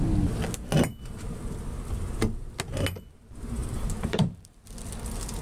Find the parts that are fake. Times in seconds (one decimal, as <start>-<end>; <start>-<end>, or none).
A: 3.6-4.6